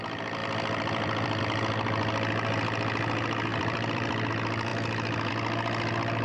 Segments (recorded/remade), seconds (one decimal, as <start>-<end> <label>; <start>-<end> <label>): 0.0-0.4 recorded; 0.4-1.4 remade; 1.4-3.5 recorded; 3.5-4.3 remade; 4.3-6.2 recorded